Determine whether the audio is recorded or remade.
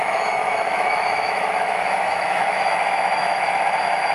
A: remade